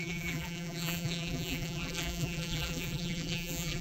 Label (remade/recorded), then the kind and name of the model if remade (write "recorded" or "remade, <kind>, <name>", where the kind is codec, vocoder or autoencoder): remade, vocoder, BigVGAN v2